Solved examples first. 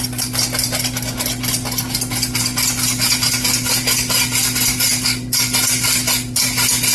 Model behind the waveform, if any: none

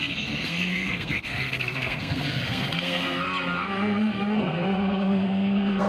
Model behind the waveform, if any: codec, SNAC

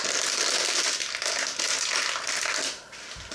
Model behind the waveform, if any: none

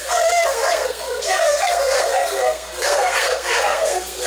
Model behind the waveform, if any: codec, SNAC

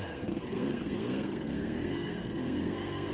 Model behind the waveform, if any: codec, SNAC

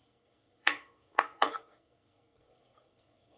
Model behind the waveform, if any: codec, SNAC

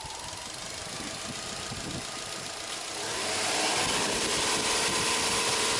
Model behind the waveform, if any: none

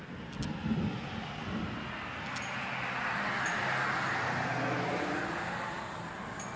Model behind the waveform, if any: none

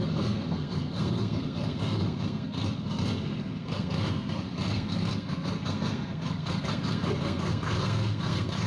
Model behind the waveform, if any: codec, SNAC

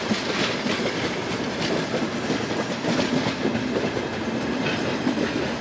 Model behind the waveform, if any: none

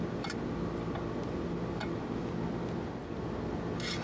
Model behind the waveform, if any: none